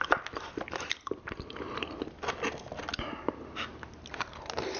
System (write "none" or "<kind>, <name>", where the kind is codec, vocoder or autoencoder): none